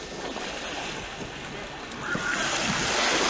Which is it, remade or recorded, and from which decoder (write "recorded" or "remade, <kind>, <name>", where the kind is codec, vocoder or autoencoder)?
recorded